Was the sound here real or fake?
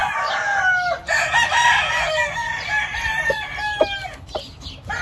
real